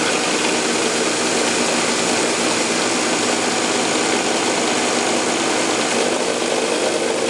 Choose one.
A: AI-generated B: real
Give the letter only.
B